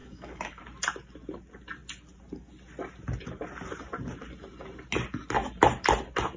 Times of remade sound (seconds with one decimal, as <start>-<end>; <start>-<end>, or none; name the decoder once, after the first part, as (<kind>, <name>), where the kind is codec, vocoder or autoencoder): 0.0-0.6 (codec, DAC)